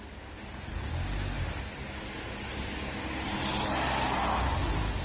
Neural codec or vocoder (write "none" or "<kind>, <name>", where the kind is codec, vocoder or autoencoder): none